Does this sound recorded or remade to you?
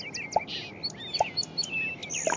recorded